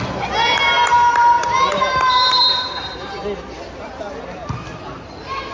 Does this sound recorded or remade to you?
recorded